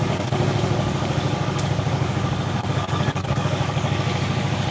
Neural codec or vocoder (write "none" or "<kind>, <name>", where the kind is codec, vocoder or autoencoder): codec, DAC